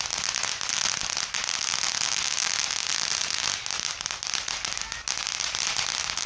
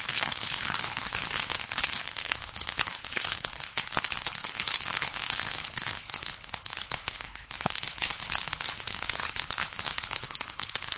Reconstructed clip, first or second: second